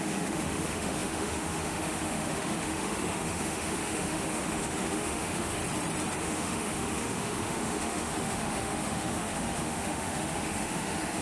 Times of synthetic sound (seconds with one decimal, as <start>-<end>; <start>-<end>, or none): 0.0-5.6; 6.2-11.2